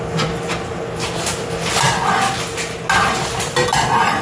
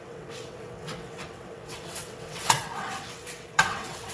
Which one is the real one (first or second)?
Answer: first